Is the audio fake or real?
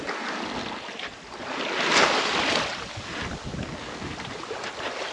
real